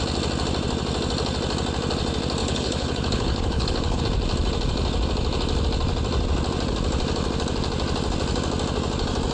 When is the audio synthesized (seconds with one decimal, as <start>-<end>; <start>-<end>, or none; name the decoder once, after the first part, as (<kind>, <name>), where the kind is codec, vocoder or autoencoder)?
2.4-4.0 (codec, HILCodec)